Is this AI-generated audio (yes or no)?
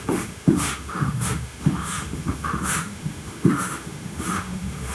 yes